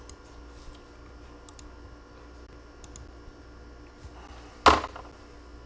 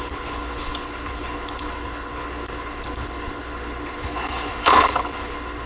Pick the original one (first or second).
first